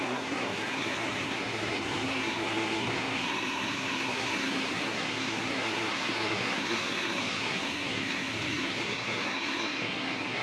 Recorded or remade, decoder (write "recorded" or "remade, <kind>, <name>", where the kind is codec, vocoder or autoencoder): remade, codec, SNAC